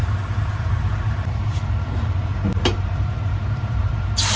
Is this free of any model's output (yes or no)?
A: no